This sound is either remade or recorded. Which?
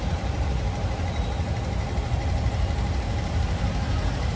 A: recorded